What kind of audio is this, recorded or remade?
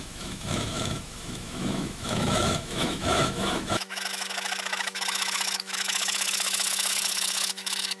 remade